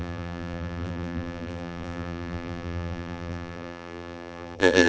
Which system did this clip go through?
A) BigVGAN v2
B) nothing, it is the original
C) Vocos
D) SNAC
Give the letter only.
A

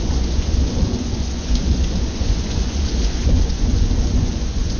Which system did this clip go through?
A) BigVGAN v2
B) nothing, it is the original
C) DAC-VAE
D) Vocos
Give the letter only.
D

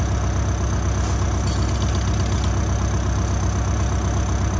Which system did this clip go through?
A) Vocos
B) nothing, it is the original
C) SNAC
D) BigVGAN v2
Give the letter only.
B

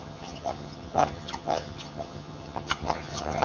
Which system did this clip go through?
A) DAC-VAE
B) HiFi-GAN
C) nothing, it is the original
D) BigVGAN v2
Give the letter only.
B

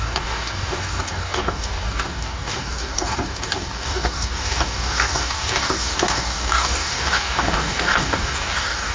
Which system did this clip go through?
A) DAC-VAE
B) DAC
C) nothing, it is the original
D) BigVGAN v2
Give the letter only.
B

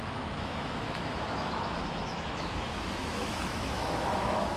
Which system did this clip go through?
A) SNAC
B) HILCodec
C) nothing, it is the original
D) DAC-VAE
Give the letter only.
D